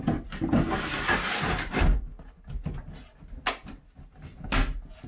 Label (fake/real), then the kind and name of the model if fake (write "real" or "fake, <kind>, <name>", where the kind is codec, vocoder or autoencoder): real